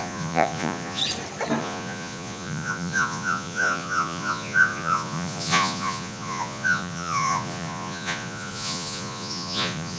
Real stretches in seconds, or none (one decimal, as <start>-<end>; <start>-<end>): 1.0-1.6